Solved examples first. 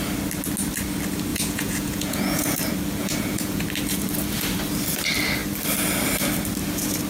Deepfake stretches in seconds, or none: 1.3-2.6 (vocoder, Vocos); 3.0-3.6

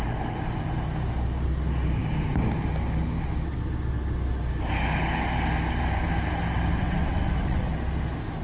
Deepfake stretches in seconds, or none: 6.8-7.7 (vocoder, WaveNeXt)